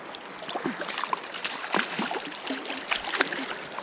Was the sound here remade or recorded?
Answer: recorded